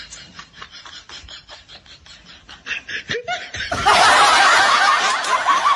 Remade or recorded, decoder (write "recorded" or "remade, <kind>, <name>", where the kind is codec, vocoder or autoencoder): recorded